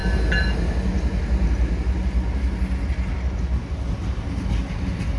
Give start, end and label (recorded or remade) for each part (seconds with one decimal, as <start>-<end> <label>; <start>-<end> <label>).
0.0-5.2 recorded